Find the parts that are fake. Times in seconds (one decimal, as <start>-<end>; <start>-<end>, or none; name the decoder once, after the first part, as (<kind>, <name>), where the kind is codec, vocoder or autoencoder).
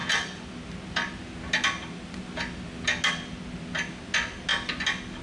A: none